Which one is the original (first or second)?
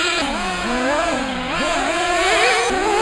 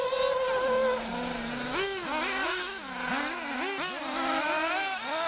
second